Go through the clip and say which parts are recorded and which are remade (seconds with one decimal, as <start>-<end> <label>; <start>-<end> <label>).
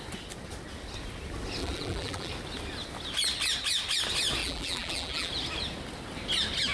0.0-1.6 recorded; 1.6-2.3 remade; 2.3-4.4 recorded; 4.4-5.3 remade; 5.3-6.7 recorded